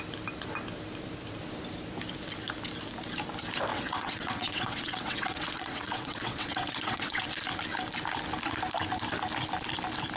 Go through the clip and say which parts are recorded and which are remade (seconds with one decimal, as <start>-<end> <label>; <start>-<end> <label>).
0.0-3.7 recorded; 3.7-7.3 remade; 7.3-10.2 recorded